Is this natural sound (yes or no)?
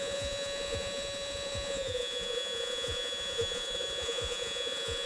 no